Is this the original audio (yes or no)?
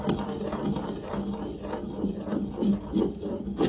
yes